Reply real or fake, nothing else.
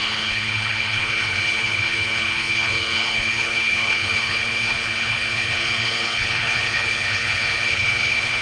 fake